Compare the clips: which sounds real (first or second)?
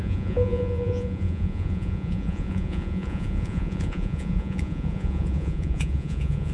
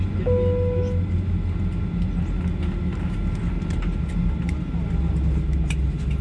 second